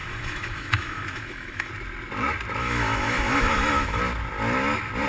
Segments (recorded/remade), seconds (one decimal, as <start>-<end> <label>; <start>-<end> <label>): 0.0-1.7 remade; 1.7-2.6 recorded; 2.6-4.0 remade; 4.0-5.1 recorded